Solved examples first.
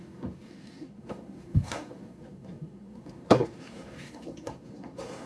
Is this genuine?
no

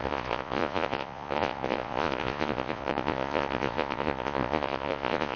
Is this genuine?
no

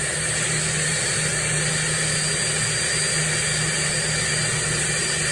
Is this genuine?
yes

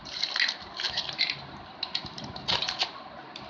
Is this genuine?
yes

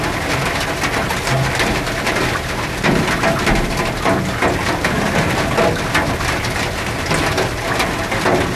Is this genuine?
yes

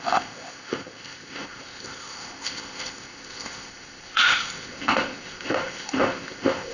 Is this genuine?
no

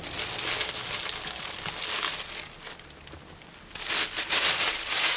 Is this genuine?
yes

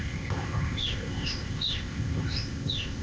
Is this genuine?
no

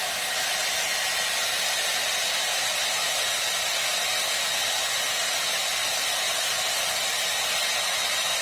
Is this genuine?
yes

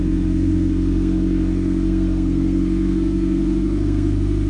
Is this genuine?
no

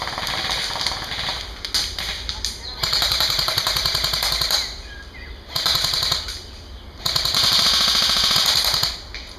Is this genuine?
yes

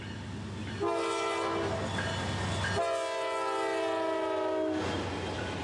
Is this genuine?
yes